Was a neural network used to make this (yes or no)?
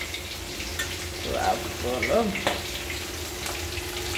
no